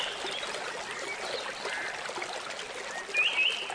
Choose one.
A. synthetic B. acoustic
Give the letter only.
B